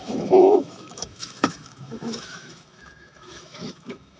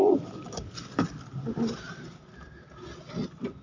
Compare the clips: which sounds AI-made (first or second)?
first